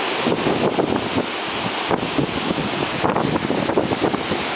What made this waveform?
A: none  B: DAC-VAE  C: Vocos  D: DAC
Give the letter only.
A